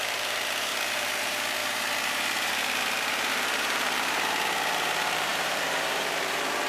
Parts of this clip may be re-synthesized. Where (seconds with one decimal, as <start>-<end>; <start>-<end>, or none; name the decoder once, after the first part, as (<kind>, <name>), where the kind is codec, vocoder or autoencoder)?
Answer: 0.0-6.7 (vocoder, BigVGAN v2)